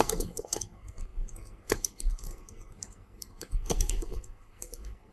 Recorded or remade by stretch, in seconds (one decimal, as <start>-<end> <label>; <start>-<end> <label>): 0.0-5.1 remade